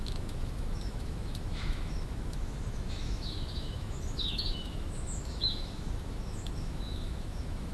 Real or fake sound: fake